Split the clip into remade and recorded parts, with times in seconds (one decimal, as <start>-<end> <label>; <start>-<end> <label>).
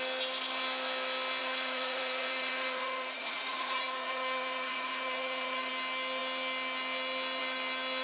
0.0-1.4 recorded; 1.4-5.7 remade; 5.7-8.0 recorded